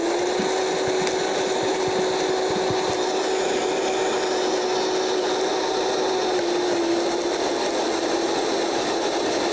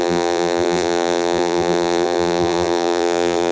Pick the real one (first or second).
first